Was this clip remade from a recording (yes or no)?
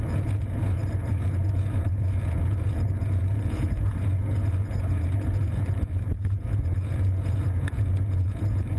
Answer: yes